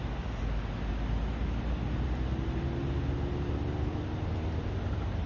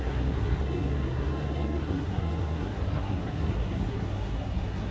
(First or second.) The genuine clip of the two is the first